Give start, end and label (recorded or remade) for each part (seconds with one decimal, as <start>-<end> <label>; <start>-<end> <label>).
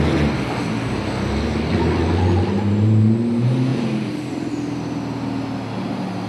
0.0-3.7 recorded; 3.7-4.5 remade; 4.5-6.3 recorded